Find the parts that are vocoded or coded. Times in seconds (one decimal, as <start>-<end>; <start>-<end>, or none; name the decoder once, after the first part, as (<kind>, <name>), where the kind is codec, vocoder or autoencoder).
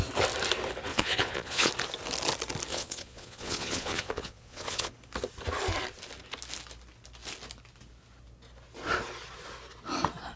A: 0.9-1.7 (vocoder, Vocos); 2.7-4.9